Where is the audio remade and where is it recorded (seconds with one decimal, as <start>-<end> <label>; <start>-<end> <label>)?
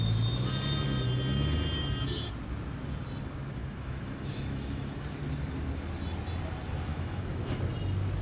0.0-3.6 recorded; 3.6-5.0 remade; 5.0-6.9 recorded; 6.9-7.6 remade; 7.6-8.2 recorded